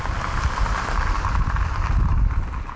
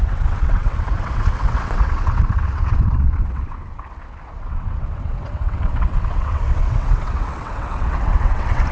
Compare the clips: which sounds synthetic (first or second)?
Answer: second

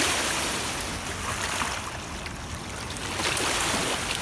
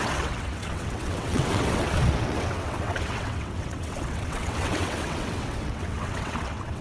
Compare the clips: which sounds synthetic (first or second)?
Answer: second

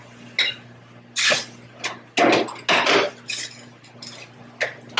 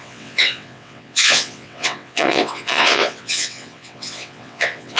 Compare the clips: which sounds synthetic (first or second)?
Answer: second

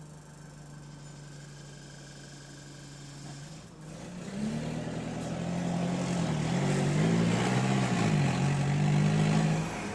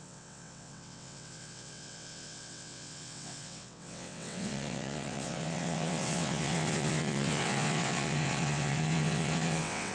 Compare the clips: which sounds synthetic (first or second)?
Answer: second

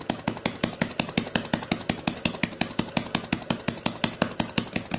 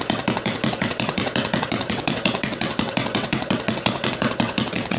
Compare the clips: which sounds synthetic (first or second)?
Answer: second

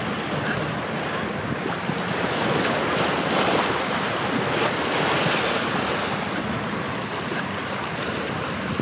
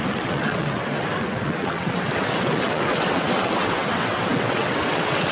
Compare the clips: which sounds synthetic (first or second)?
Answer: second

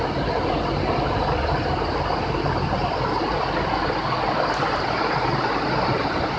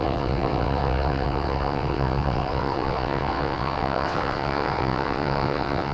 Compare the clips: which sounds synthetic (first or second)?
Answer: second